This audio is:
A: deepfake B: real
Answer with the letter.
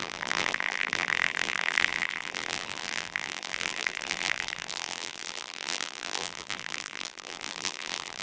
A